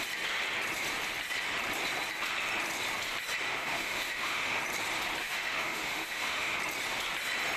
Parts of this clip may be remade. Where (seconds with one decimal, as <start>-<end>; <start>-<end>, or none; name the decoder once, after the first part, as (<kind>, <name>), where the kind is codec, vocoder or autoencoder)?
3.5-4.6 (autoencoder, DAC-VAE); 5.2-6.6